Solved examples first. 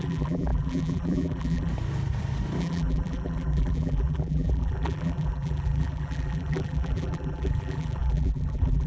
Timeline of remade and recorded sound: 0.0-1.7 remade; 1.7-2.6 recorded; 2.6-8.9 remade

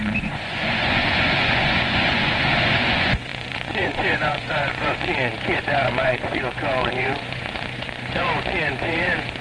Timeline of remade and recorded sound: 0.0-9.4 remade

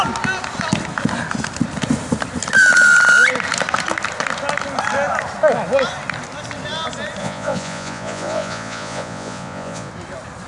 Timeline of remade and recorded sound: 0.0-7.2 recorded; 7.2-9.9 remade; 9.9-10.5 recorded

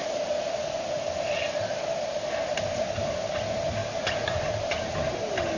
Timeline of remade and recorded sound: 0.0-5.6 recorded

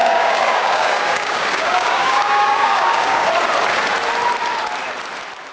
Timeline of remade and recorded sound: 0.0-3.3 remade; 3.3-5.5 recorded

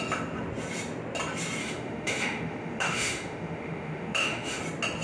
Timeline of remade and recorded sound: 0.0-1.6 recorded; 1.6-4.6 remade; 4.6-5.0 recorded

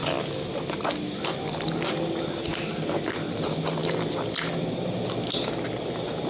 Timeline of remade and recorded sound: 0.0-1.3 recorded; 1.3-2.5 remade; 2.5-3.3 recorded; 3.3-6.3 remade